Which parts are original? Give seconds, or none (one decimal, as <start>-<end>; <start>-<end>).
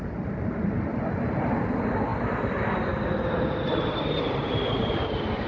0.0-5.5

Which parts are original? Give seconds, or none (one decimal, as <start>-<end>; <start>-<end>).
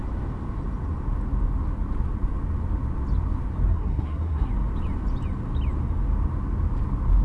0.0-3.7; 4.5-7.2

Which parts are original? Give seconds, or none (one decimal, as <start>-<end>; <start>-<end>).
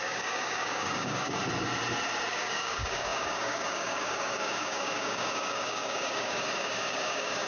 1.4-2.3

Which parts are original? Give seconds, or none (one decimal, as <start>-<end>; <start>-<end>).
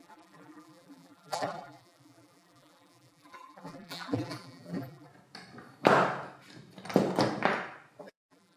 5.1-8.0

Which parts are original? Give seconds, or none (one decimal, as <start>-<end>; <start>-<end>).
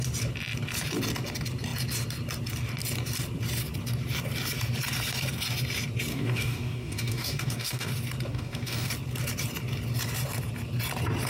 0.0-6.1; 7.9-8.3; 8.9-11.3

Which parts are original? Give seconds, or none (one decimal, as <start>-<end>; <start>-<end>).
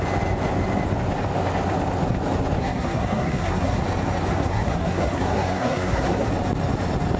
0.0-2.6; 3.8-4.3; 6.3-7.2